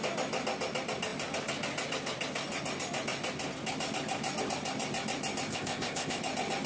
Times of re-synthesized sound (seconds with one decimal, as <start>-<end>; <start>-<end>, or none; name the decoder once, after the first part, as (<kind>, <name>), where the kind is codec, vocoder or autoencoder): 5.5-6.2 (codec, ZipCodec)